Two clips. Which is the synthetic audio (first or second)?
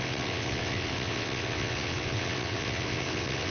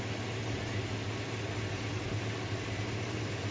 first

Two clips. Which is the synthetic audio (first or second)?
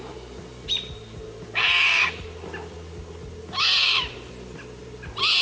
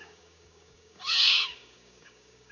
second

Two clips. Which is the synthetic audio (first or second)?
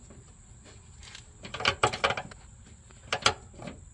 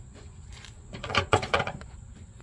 second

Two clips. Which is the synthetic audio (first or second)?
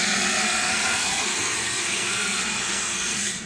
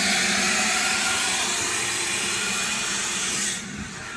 first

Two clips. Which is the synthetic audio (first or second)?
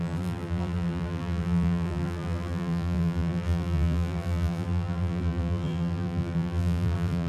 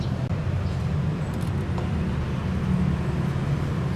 first